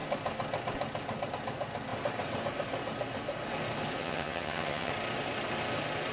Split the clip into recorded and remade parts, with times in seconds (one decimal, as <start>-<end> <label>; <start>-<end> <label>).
0.0-4.0 recorded; 4.0-4.9 remade; 4.9-6.1 recorded